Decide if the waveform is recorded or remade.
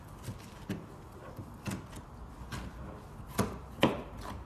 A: recorded